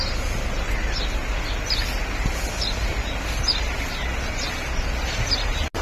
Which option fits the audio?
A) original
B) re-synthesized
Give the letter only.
A